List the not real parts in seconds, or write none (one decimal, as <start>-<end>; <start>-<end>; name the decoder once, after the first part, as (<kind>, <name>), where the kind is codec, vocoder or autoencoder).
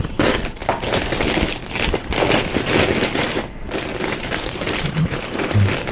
0.0-0.6 (vocoder, BigVGAN v2); 4.1-5.9